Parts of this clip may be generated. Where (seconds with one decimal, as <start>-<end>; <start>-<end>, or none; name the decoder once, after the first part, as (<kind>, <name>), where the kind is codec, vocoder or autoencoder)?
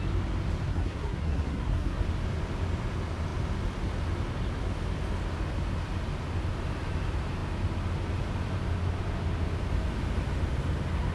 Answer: 0.7-2.0 (codec, SNAC)